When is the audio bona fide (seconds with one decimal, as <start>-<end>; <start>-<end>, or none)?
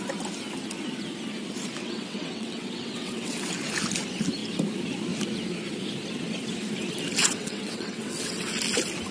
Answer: 0.0-1.8; 3.5-7.2; 8.5-9.1